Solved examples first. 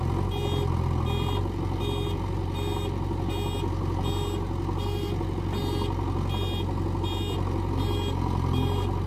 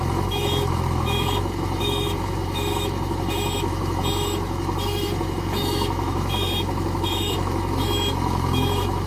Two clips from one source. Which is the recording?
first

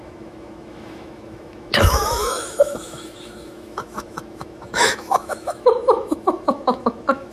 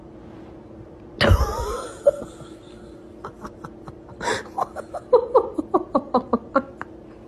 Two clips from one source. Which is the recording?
second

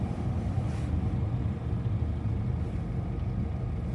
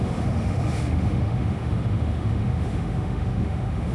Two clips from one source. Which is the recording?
first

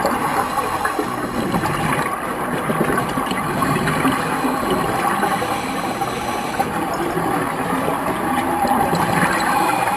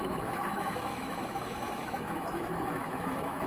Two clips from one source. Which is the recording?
first